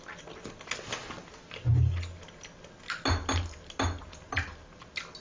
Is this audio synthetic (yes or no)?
no